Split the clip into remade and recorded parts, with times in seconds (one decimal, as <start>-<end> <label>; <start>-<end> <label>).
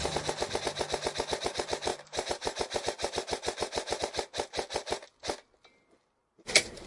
0.0-1.9 recorded; 1.9-4.0 remade; 4.0-6.2 recorded; 6.2-6.9 remade